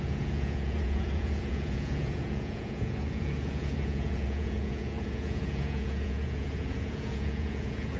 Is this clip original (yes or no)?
no